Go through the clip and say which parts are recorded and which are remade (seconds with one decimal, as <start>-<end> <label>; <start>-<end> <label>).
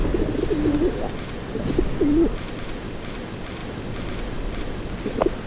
0.0-5.5 recorded